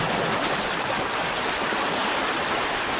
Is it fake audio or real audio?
real